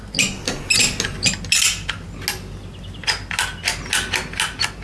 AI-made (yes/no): no